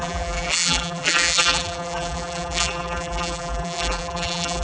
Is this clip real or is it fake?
fake